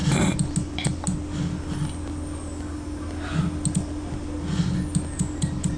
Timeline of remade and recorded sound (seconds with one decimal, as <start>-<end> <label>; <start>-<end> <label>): 0.0-5.8 recorded

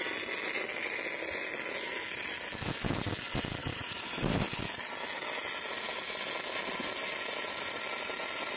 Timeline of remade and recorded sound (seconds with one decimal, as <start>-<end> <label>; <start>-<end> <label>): 0.0-3.6 recorded; 3.6-4.6 remade; 4.6-8.6 recorded

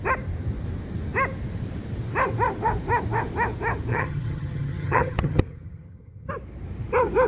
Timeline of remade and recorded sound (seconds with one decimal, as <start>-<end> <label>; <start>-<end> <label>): 0.0-3.9 recorded; 3.9-6.3 remade; 6.3-7.3 recorded

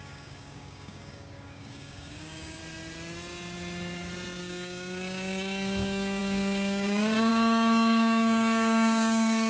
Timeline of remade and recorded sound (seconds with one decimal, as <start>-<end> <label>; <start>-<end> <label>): 0.0-2.6 remade; 2.6-4.4 recorded; 4.4-9.5 remade

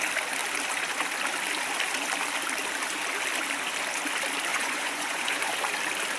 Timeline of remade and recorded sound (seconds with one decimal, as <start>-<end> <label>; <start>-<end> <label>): 0.0-4.5 recorded; 4.5-5.5 remade; 5.5-6.2 recorded

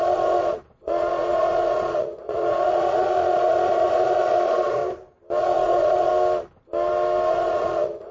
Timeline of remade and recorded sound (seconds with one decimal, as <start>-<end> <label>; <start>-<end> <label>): 0.0-4.8 remade; 4.8-5.4 recorded; 5.4-6.1 remade; 6.1-7.3 recorded; 7.3-8.1 remade

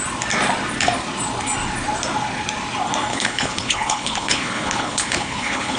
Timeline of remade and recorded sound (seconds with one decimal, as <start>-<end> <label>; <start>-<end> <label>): 0.0-3.1 recorded; 3.1-5.8 remade